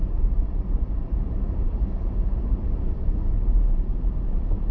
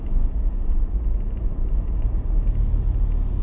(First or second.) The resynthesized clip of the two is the first